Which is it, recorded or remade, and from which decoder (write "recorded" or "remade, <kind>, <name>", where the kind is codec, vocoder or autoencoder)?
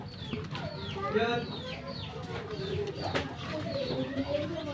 recorded